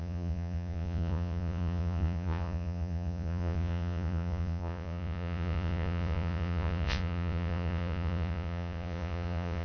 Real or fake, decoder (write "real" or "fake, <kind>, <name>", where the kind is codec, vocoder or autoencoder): fake, vocoder, Vocos